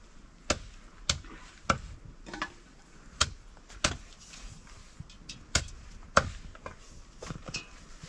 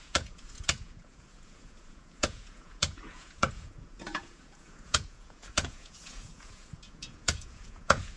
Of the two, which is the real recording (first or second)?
first